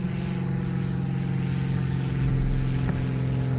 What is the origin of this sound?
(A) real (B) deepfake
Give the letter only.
A